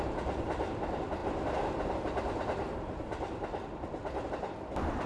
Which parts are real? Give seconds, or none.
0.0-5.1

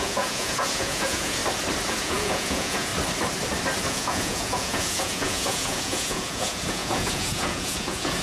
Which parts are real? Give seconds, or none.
1.4-1.9; 2.9-3.9

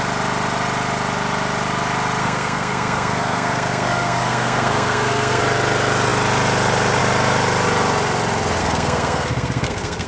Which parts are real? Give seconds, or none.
0.0-2.2; 5.4-8.6

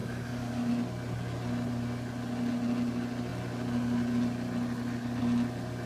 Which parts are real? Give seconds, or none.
0.7-5.9

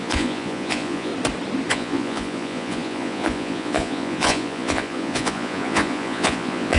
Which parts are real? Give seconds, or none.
1.1-1.7

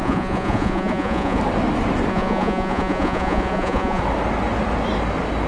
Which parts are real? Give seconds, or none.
1.4-2.1; 4.0-5.5

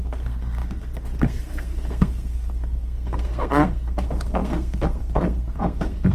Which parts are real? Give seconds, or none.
none